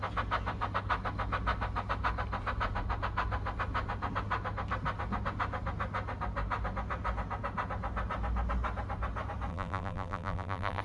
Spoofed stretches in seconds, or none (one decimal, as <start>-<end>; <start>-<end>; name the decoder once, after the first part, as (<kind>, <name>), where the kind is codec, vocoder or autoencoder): 9.5-10.8 (vocoder, BigVGAN v2)